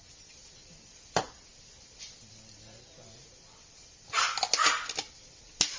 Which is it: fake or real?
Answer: real